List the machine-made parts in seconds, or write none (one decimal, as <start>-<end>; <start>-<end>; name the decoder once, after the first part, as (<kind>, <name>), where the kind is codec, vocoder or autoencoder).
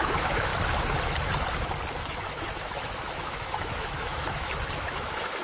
0.0-0.5 (autoencoder, DAC-VAE); 2.0-5.4